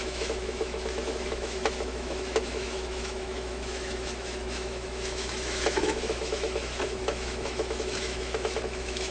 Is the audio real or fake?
fake